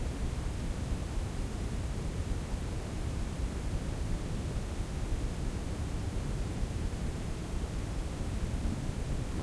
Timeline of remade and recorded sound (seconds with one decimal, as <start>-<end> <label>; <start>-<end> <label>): 0.0-1.0 recorded; 1.0-3.7 remade; 3.7-5.6 recorded; 5.6-8.0 remade; 8.0-9.4 recorded